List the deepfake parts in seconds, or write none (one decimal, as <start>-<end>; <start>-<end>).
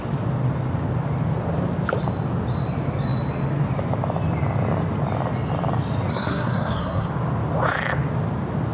6.1-7.1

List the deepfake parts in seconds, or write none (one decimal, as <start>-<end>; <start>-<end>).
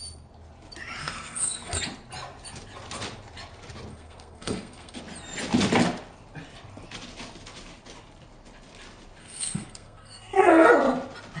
1.0-1.8; 3.9-5.0; 9.2-10.7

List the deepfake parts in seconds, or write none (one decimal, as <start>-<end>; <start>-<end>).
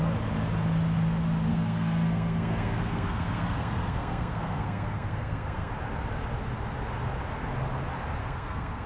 1.5-5.7; 8.2-8.9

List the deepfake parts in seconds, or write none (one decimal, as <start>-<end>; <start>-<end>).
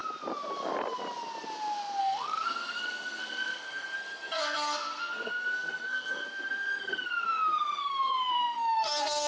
2.0-9.3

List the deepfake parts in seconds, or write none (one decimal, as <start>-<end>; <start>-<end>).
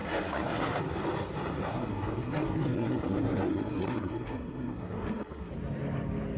0.0-0.8; 1.7-5.5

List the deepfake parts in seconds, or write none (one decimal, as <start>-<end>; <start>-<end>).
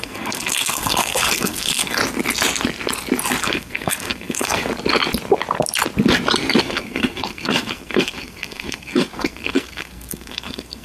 0.0-2.0; 3.4-4.7; 6.6-10.8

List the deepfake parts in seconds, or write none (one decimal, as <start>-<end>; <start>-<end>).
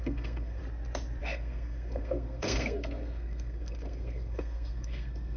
0.0-0.6; 1.2-5.4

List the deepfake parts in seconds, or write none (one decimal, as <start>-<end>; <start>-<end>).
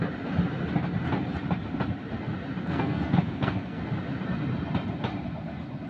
2.6-3.8